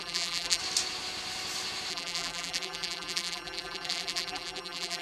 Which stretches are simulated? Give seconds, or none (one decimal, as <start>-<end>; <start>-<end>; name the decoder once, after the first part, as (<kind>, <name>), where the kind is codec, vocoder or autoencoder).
0.0-0.6 (vocoder, BigVGAN v2); 1.9-5.0